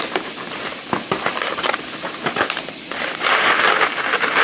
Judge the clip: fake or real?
real